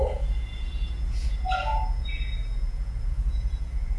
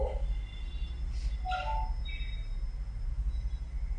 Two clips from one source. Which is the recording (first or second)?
second